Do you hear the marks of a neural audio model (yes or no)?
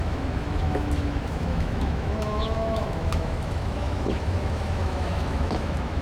yes